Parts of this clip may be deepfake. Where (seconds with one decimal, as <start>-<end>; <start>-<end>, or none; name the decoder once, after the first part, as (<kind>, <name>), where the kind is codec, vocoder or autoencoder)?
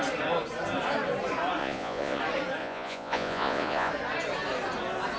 1.6-2.2 (vocoder, Vocos); 2.6-3.9